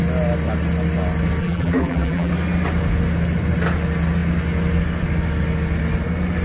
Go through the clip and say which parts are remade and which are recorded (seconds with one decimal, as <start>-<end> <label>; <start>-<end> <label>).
0.0-1.4 recorded; 1.4-2.3 remade; 2.3-6.4 recorded